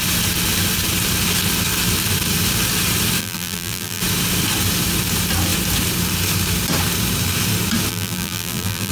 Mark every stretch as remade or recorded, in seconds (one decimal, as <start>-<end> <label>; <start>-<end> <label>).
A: 0.0-3.2 recorded; 3.2-4.0 remade; 4.0-7.9 recorded; 7.9-8.9 remade

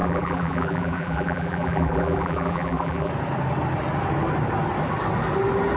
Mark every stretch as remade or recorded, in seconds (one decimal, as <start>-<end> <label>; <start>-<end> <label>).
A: 0.0-3.1 remade; 3.1-5.8 recorded

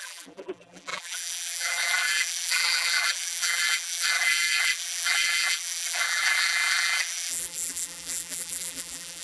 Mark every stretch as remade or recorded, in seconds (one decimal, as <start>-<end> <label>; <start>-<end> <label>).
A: 0.0-9.2 remade

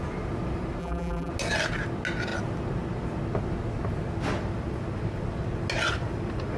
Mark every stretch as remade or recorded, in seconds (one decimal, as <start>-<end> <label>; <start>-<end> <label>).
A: 0.0-0.8 recorded; 0.8-1.3 remade; 1.3-6.6 recorded

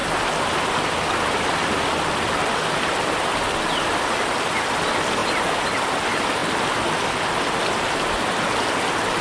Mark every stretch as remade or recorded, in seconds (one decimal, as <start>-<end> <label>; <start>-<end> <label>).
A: 0.0-4.0 recorded; 4.0-5.2 remade; 5.2-5.8 recorded; 5.8-6.4 remade; 6.4-9.2 recorded

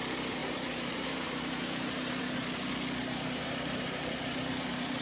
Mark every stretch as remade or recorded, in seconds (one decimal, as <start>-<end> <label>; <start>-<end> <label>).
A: 0.0-0.4 recorded; 0.4-2.2 remade; 2.2-3.0 recorded; 3.0-5.0 remade

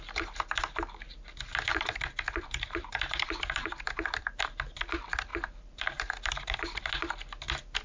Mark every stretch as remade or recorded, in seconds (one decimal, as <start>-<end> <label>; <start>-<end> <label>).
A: 0.0-1.7 recorded; 1.7-4.3 remade; 4.3-5.3 recorded; 5.3-6.6 remade; 6.6-7.8 recorded